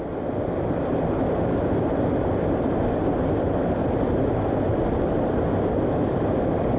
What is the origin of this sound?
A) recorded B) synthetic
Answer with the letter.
A